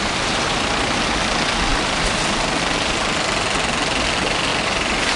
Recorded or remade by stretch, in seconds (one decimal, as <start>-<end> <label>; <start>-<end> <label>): 0.0-5.2 recorded